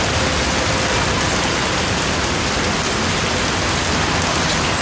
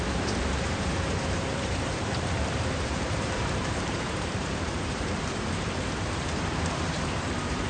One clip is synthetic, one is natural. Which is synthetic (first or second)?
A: second